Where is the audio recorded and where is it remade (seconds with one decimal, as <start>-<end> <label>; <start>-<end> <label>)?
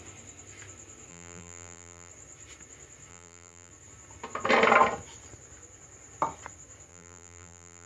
0.0-1.1 recorded; 1.1-2.1 remade; 2.1-3.1 recorded; 3.1-3.7 remade; 3.7-6.9 recorded; 6.9-7.9 remade